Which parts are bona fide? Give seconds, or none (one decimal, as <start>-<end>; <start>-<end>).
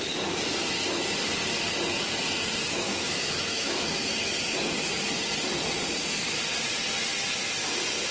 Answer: 0.0-2.6; 4.9-8.1